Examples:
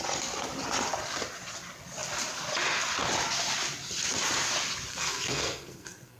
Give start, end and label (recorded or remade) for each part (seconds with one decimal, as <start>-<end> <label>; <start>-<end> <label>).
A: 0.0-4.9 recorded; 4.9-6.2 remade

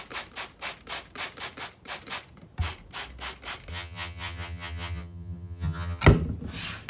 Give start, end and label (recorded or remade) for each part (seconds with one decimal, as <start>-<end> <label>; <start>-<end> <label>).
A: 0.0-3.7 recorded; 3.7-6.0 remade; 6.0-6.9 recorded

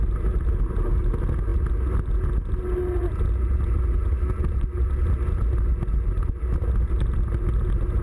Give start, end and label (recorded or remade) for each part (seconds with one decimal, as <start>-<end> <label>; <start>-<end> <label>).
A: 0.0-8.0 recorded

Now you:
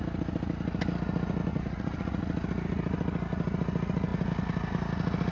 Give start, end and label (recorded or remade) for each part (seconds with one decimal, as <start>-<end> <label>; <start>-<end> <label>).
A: 0.0-1.5 recorded; 1.5-2.2 remade; 2.2-5.3 recorded

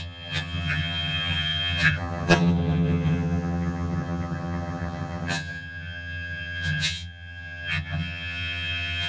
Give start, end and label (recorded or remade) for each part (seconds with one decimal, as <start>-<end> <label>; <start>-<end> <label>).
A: 0.0-9.1 remade

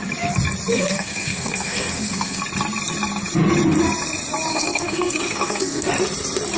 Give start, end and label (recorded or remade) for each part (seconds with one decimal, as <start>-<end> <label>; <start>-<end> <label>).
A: 0.0-0.7 recorded; 0.7-2.4 remade; 2.4-4.5 recorded; 4.5-5.9 remade; 5.9-6.6 recorded